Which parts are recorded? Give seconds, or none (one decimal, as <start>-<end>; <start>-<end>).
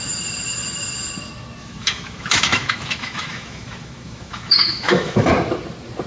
0.0-1.6; 5.3-6.1